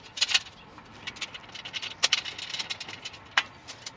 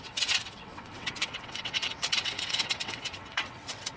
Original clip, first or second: first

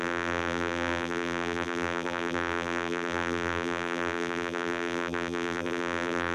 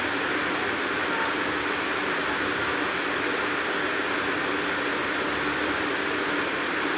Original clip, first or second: second